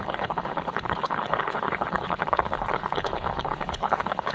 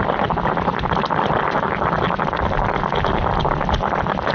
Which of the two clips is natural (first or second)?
second